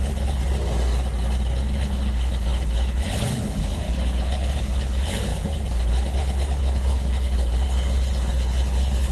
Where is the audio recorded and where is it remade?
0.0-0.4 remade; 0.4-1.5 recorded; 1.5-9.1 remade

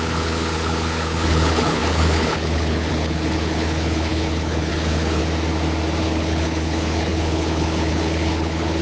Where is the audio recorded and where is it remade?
0.0-5.2 remade; 5.2-6.0 recorded; 6.0-8.8 remade

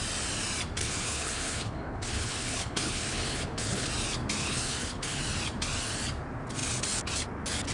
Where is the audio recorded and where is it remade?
0.0-0.8 recorded; 0.8-3.9 remade; 3.9-4.4 recorded; 4.4-5.2 remade; 5.2-7.7 recorded